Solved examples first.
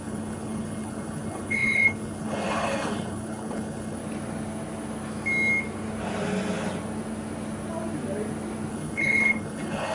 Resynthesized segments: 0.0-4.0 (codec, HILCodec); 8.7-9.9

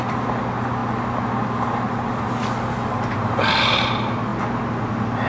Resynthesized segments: none

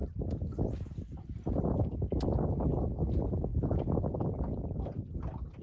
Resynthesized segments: none

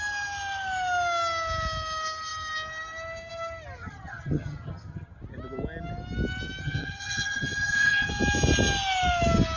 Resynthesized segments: 3.8-5.2 (vocoder, HiFi-GAN); 6.6-8.1

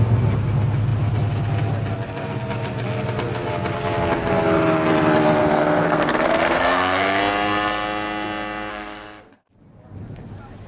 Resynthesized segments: 5.4-7.2 (codec, SNAC); 8.7-9.5